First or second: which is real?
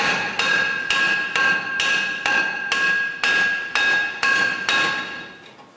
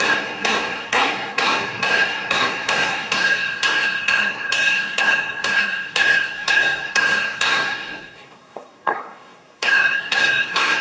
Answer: first